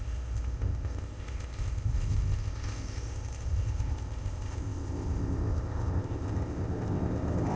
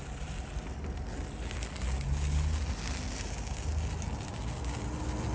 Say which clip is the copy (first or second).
first